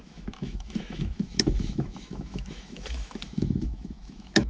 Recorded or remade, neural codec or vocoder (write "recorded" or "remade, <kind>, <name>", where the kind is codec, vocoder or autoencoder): remade, autoencoder, DAC-VAE